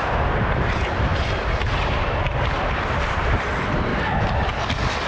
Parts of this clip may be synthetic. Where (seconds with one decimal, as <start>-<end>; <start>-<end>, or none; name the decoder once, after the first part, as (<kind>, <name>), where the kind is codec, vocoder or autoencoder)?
0.0-3.9 (vocoder, BigVGAN v2)